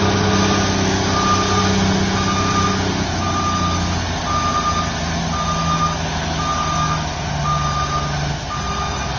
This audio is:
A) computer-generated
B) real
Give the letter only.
B